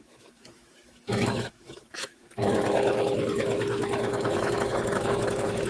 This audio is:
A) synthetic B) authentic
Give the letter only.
A